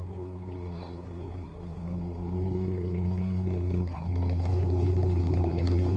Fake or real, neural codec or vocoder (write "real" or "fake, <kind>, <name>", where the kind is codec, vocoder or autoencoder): fake, codec, SNAC